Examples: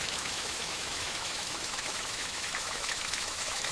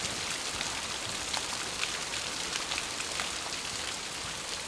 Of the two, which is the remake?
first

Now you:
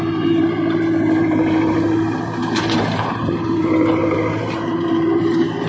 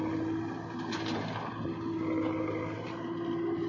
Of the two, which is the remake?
first